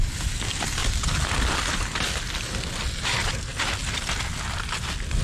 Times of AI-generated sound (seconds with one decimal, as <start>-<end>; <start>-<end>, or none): 0.8-3.3